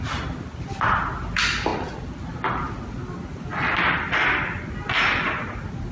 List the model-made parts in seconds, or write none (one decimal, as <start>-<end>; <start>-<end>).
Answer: none

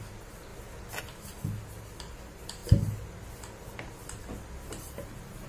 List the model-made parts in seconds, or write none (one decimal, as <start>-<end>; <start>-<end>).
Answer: none

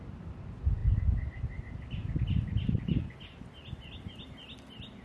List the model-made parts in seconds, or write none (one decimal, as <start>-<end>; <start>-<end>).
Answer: none